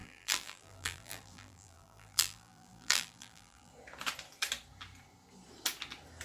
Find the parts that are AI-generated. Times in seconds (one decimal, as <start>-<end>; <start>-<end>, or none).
0.0-3.7